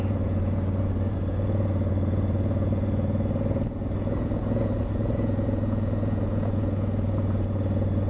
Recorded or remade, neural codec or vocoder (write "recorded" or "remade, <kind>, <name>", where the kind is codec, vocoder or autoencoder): remade, vocoder, Vocos